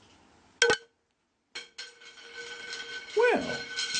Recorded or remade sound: recorded